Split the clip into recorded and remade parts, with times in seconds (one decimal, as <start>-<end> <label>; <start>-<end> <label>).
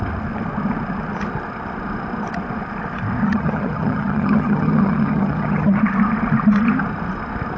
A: 0.0-3.2 recorded; 3.2-5.8 remade; 5.8-7.6 recorded